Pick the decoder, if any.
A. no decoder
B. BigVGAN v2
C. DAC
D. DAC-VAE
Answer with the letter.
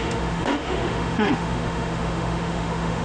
D